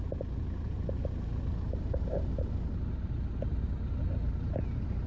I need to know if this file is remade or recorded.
recorded